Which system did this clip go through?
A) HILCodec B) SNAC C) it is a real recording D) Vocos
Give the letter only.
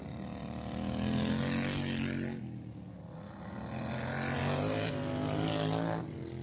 C